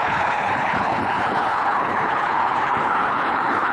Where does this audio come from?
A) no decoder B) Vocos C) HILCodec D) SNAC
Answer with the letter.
C